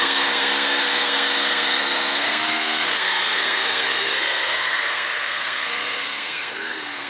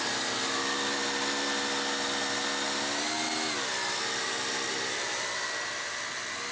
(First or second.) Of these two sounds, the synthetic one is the first